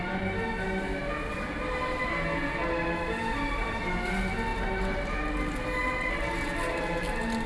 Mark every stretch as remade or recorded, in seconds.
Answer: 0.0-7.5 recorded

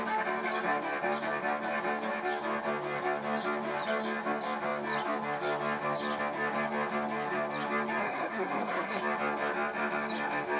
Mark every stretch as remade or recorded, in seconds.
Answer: 0.0-8.0 recorded; 8.0-9.0 remade; 9.0-10.6 recorded

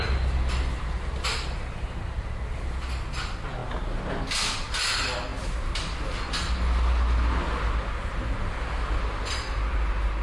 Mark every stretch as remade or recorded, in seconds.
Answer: 0.0-10.2 recorded

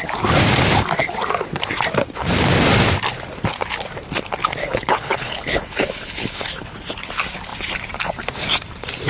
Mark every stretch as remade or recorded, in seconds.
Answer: 0.0-4.6 recorded; 4.6-7.1 remade; 7.1-9.1 recorded

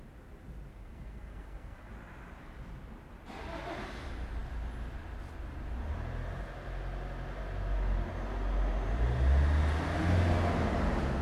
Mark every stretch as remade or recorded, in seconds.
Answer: 0.0-0.7 recorded; 0.7-1.9 remade; 1.9-11.2 recorded